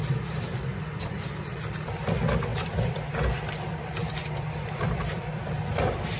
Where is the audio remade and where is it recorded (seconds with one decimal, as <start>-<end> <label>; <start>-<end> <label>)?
0.0-1.9 remade; 1.9-4.2 recorded; 4.2-5.5 remade; 5.5-6.2 recorded